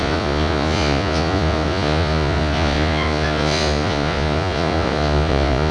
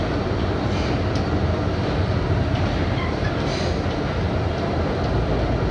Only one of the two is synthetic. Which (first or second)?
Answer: first